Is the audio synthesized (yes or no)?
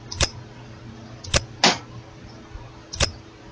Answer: no